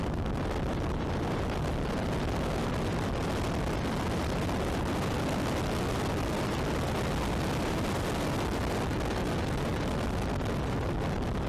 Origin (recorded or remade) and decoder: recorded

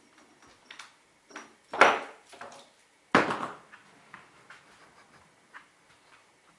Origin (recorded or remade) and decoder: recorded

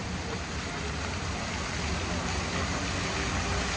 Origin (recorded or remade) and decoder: recorded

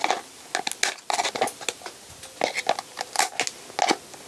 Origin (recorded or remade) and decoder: recorded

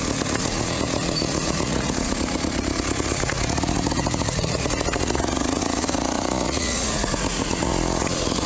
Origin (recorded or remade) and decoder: remade, vocoder, Vocos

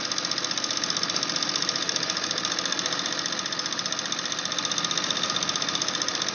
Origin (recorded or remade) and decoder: recorded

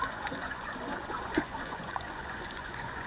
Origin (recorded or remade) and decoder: remade, vocoder, Vocos